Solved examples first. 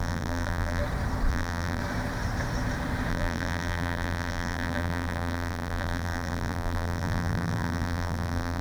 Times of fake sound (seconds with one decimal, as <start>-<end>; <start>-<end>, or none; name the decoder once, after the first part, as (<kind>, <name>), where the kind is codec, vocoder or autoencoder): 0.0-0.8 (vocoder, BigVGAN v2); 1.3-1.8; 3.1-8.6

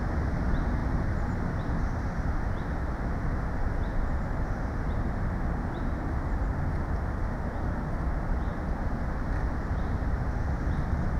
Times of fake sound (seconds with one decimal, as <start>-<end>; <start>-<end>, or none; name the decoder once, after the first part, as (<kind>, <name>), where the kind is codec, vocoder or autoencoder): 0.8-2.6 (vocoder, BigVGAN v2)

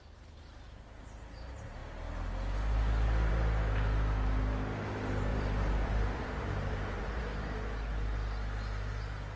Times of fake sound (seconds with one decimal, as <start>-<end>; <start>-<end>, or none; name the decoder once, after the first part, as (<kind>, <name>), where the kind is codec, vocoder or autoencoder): 5.3-7.2 (vocoder, BigVGAN v2)

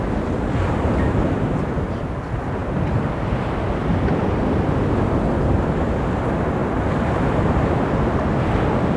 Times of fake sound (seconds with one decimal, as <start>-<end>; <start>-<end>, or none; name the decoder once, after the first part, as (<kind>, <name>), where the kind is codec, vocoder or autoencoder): 6.6-7.8 (vocoder, BigVGAN v2)

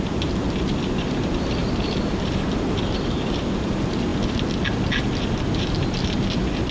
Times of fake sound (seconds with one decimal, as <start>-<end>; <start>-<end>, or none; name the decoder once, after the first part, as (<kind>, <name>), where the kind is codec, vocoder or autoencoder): 1.6-2.5 (vocoder, BigVGAN v2)

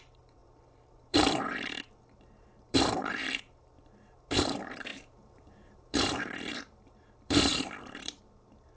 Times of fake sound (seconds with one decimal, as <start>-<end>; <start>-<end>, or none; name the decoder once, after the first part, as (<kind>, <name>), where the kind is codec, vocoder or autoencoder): 0.0-8.8 (vocoder, BigVGAN v2)

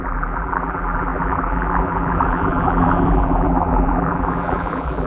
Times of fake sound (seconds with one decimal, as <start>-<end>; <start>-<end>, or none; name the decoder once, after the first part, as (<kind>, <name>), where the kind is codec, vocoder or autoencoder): 0.0-5.1 (vocoder, BigVGAN v2)

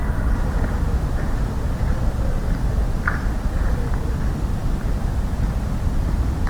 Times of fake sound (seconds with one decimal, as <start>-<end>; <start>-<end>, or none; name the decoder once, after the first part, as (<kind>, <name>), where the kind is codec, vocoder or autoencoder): 0.0-6.5 (vocoder, BigVGAN v2)